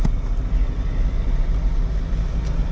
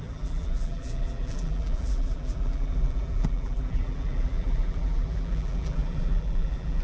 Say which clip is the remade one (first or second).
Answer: second